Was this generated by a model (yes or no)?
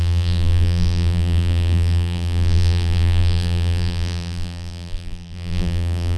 yes